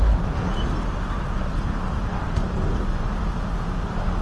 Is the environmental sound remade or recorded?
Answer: recorded